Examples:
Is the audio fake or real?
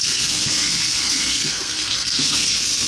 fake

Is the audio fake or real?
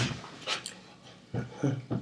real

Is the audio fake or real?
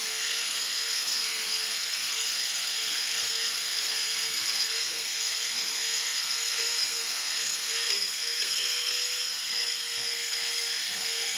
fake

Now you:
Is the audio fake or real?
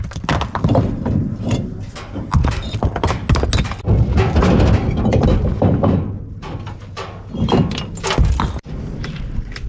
real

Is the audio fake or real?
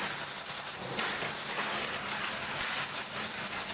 real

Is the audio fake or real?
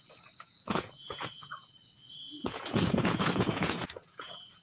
fake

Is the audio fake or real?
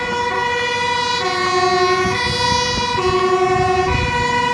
real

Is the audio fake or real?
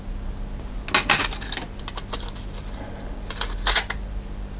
real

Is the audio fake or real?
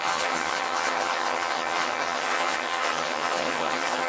fake